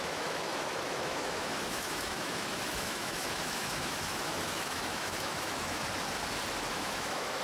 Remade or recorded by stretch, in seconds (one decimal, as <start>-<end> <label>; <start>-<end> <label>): 0.0-5.8 remade; 5.8-6.7 recorded; 6.7-7.4 remade